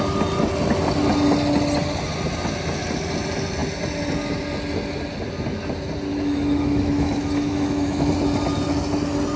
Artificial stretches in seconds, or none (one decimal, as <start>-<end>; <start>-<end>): 6.1-8.1